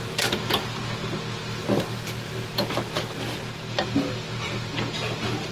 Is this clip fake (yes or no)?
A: no